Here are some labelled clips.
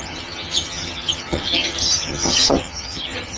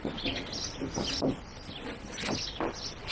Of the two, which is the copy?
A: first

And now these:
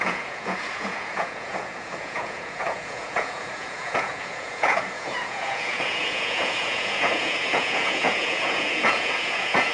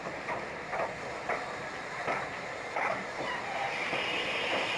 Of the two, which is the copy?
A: first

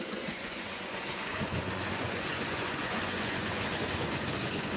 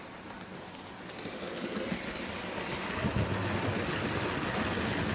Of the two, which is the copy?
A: first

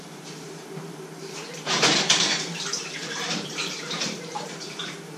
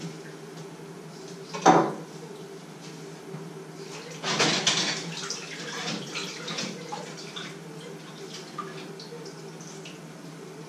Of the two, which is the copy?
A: first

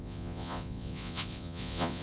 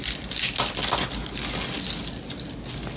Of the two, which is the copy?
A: first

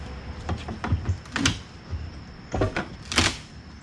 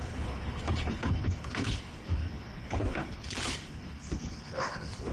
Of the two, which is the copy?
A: second